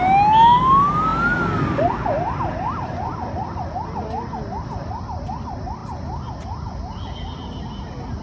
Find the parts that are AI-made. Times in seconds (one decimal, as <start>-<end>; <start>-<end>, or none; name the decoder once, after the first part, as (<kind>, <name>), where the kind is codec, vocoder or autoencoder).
none